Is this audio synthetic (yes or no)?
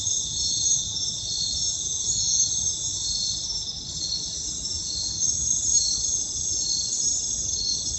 no